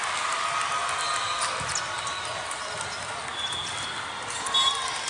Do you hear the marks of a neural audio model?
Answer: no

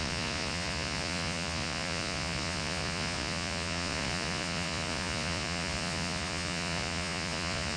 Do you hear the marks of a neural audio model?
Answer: yes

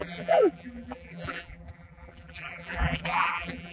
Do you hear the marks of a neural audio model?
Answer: yes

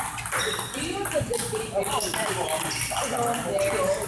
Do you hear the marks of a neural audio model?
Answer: no